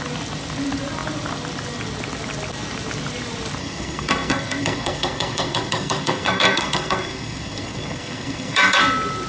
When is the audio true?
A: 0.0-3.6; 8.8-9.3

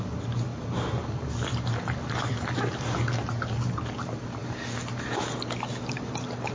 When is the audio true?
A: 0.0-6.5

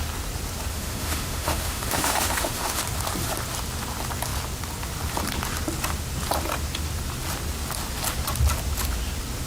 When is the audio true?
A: 0.0-0.7; 2.8-9.5

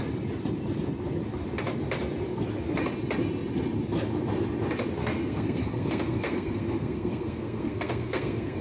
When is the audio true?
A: 0.0-5.0

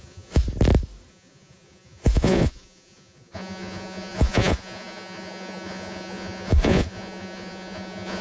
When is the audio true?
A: 0.4-1.1